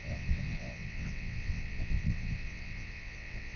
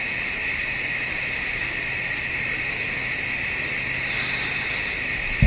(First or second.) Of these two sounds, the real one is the second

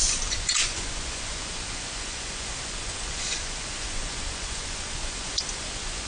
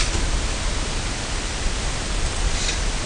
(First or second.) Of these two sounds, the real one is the second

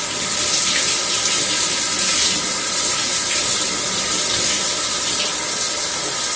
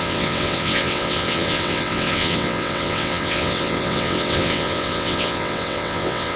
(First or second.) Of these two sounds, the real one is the first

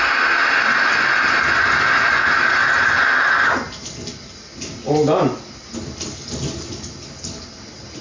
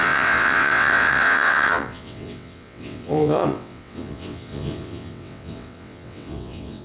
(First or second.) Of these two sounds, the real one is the first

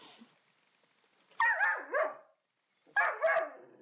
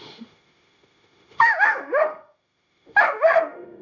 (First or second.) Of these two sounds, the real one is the first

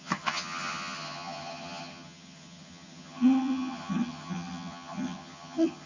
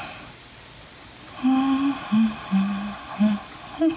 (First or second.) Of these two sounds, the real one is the second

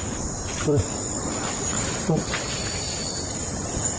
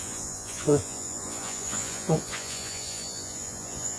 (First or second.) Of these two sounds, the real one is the first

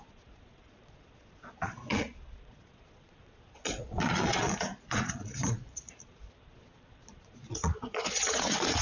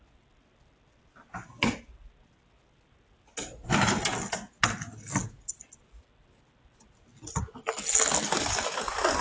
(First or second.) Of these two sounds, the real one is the second